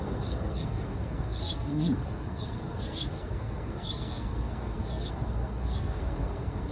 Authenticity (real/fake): fake